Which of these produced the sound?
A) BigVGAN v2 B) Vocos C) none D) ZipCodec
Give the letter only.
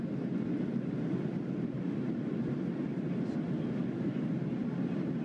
C